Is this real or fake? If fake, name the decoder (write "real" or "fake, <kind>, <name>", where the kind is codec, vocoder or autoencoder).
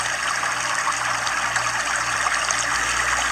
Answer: real